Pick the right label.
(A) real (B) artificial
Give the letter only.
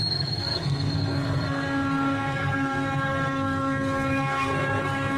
B